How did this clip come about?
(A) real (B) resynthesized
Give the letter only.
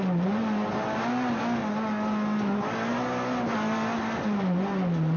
A